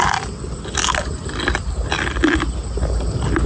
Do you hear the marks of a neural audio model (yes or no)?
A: no